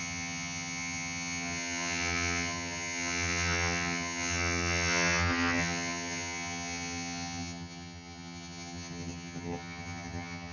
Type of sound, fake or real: fake